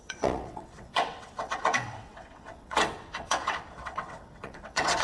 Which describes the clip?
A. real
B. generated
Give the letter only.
B